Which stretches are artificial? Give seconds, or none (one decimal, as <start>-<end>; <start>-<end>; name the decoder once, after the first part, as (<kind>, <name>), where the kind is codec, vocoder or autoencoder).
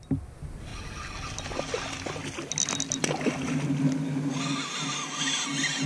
none